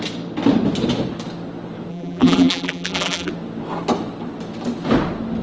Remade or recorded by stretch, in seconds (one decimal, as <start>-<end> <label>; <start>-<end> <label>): 0.0-1.9 recorded; 1.9-3.3 remade; 3.3-5.4 recorded